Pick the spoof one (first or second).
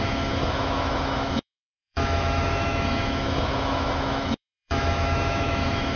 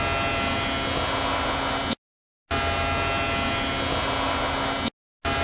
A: first